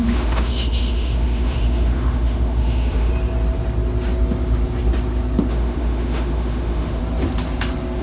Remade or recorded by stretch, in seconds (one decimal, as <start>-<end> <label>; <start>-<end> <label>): 0.0-3.1 remade; 3.1-5.5 recorded; 5.5-7.0 remade; 7.0-8.0 recorded